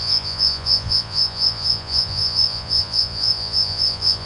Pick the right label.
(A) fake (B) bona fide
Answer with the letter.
A